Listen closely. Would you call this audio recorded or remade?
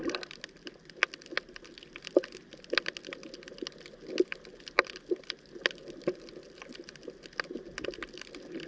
recorded